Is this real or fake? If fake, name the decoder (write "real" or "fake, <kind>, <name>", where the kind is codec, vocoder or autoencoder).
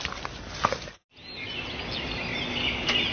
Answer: real